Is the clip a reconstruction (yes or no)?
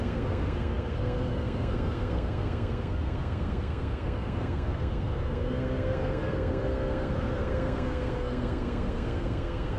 yes